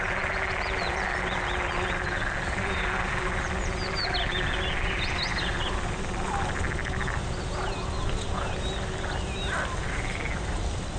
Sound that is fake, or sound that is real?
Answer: real